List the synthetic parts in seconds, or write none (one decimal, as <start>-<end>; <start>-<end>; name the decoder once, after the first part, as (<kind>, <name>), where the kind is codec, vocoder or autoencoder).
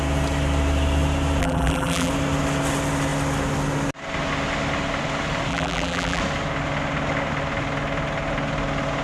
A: 1.4-2.1 (vocoder, BigVGAN v2); 5.5-6.2